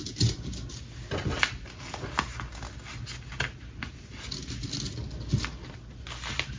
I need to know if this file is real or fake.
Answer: real